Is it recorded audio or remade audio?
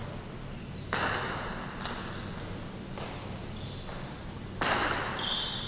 recorded